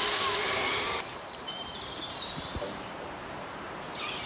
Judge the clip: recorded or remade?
remade